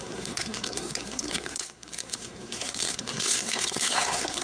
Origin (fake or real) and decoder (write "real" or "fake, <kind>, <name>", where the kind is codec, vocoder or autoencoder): fake, codec, SNAC